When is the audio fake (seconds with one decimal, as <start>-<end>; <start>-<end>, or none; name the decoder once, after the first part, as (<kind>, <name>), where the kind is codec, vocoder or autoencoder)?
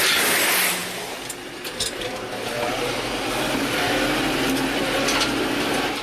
none